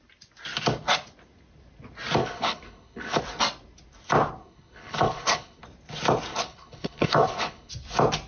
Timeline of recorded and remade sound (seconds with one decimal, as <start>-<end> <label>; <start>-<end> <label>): 0.0-2.2 recorded; 2.2-3.2 remade; 3.2-4.4 recorded; 4.4-5.6 remade; 5.6-6.3 recorded; 6.3-7.7 remade; 7.7-8.3 recorded